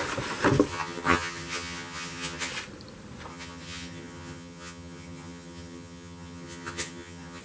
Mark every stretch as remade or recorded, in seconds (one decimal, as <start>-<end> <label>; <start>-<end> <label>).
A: 0.0-0.7 recorded; 0.7-2.5 remade; 2.5-3.3 recorded; 3.3-7.4 remade